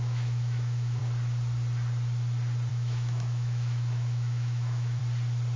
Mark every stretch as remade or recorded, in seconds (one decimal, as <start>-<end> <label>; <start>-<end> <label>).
0.0-1.0 remade; 1.0-2.7 recorded; 2.7-5.0 remade; 5.0-5.6 recorded